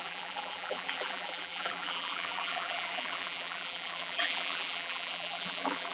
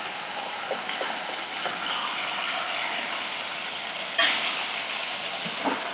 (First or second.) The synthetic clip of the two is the first